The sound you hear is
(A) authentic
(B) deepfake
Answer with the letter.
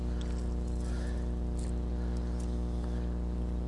A